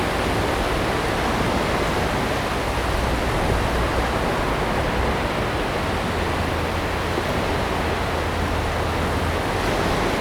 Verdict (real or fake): real